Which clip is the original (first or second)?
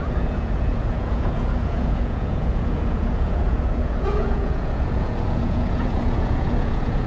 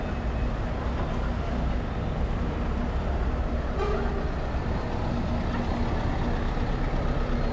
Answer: second